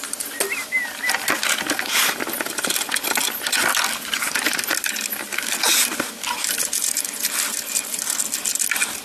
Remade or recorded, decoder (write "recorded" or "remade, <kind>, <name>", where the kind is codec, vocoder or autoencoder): recorded